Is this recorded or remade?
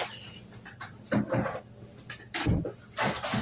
recorded